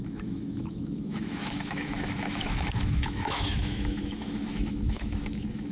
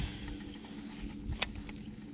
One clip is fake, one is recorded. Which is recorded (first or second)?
second